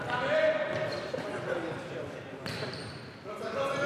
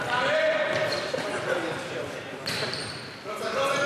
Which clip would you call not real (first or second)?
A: second